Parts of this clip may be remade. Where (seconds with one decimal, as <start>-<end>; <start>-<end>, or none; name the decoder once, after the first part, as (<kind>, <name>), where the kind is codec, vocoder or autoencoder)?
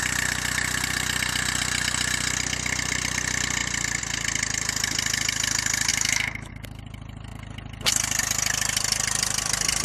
5.9-6.5 (autoencoder, DAC-VAE)